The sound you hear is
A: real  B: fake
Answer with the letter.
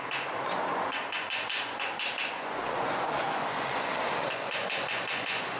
B